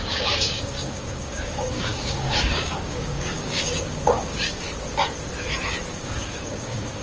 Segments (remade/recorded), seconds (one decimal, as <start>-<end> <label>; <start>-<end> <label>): 0.0-4.7 remade; 4.7-5.9 recorded; 5.9-7.0 remade